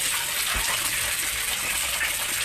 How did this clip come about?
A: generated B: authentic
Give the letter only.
B